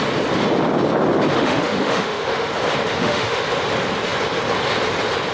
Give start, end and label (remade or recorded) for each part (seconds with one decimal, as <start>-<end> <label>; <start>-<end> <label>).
0.0-1.3 recorded; 1.3-2.5 remade; 2.5-2.9 recorded; 2.9-3.4 remade; 3.4-5.3 recorded